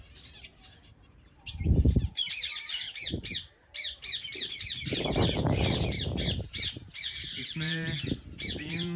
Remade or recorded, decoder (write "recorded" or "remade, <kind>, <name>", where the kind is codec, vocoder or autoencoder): remade, vocoder, BigVGAN v2